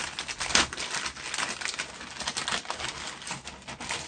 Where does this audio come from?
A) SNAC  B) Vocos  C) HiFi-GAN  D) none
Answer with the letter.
D